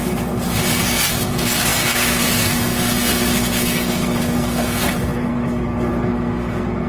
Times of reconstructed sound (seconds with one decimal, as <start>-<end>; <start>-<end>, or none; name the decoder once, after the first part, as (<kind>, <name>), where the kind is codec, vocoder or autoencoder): 0.0-6.9 (codec, SNAC)